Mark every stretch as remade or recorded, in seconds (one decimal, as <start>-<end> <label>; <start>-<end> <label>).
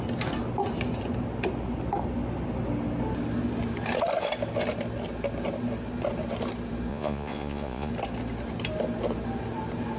0.0-6.9 recorded; 6.9-7.9 remade; 7.9-10.0 recorded